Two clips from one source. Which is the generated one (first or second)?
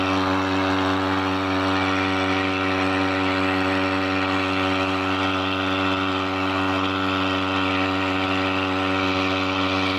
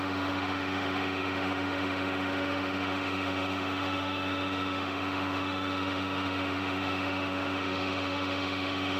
second